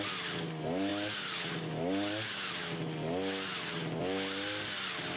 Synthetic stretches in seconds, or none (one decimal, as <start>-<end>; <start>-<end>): none